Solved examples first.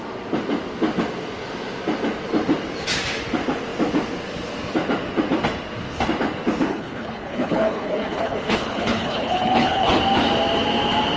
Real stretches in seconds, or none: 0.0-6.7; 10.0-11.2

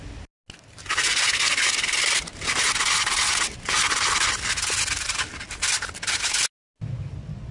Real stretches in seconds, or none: 0.0-7.5

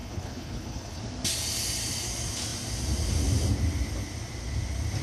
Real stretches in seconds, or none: 1.0-5.0

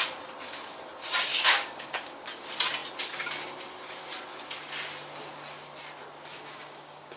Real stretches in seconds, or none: 0.0-1.3; 2.4-6.3